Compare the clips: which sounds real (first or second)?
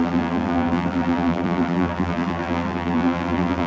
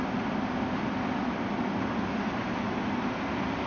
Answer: second